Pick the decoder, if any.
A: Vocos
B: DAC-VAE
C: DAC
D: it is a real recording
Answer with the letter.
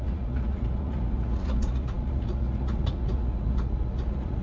A